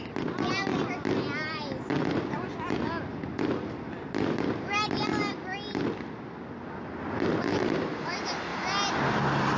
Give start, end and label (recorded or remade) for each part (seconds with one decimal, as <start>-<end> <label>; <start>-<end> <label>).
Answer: 0.0-9.6 recorded